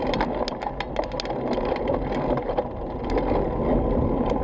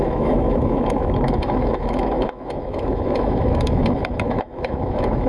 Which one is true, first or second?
first